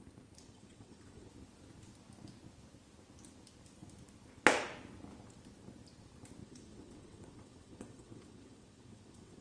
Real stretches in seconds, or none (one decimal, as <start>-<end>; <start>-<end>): 0.0-0.4; 1.3-6.4